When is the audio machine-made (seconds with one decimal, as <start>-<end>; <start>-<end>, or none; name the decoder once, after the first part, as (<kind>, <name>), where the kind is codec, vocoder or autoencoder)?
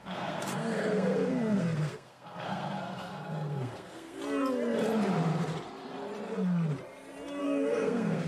0.0-4.2 (codec, SNAC); 7.4-8.3